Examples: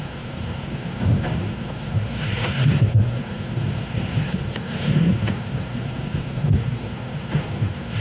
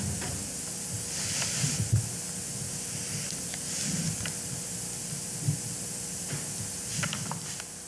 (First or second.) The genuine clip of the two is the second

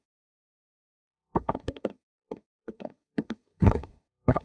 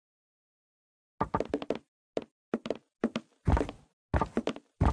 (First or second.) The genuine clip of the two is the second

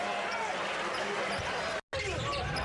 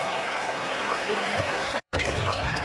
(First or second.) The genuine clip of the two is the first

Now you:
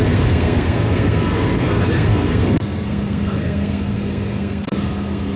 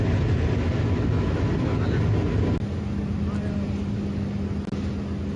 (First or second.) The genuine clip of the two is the second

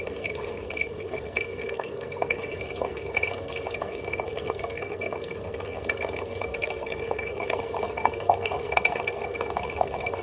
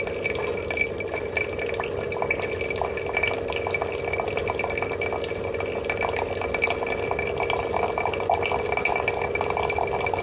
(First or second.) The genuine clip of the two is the second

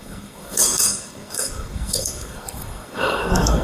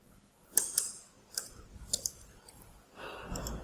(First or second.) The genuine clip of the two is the second